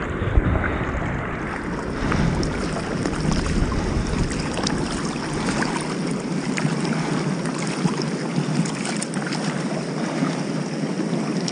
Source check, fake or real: real